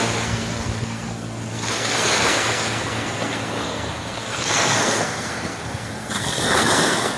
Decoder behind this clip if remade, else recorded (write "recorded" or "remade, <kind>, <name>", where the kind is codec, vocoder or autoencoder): remade, codec, SNAC